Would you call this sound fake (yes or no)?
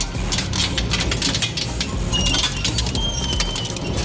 no